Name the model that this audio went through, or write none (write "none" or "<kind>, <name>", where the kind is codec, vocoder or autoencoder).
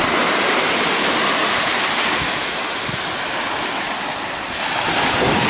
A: none